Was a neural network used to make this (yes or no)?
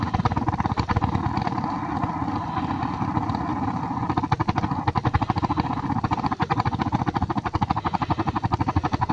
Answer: no